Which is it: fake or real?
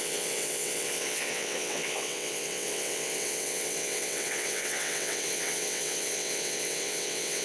fake